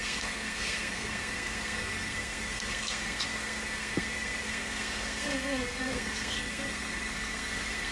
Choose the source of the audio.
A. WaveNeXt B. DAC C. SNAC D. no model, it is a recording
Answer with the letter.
C